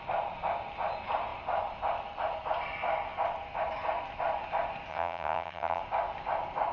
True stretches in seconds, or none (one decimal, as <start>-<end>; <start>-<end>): 0.0-4.9; 5.8-6.7